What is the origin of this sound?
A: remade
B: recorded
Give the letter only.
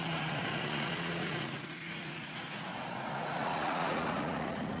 A